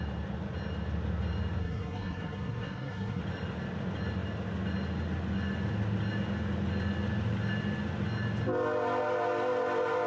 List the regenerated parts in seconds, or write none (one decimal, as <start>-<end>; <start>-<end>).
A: 1.6-3.2